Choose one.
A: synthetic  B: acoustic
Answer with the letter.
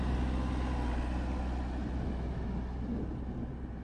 B